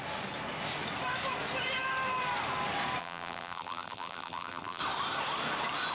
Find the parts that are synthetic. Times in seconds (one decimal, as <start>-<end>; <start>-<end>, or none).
3.0-4.8